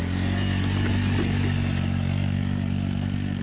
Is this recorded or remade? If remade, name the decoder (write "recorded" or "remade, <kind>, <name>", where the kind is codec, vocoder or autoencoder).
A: recorded